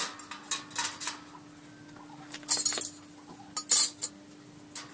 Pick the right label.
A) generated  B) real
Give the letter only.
B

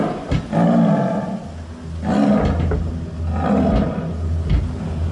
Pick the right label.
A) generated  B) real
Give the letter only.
B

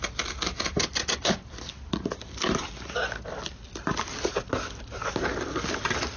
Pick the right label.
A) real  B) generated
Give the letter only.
A